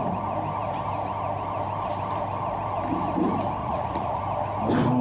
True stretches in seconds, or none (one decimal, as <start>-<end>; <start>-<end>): 0.0-3.6; 4.2-5.0